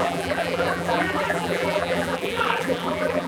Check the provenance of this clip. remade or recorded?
remade